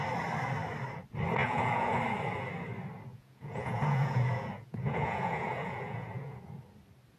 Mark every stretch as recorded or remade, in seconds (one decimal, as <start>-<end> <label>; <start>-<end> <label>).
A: 0.0-1.4 recorded; 1.4-2.0 remade; 2.0-3.1 recorded; 3.1-6.4 remade; 6.4-7.2 recorded